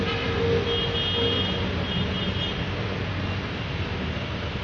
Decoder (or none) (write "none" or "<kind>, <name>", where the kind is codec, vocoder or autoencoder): none